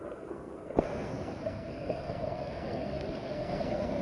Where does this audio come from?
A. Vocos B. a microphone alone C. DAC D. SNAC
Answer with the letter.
D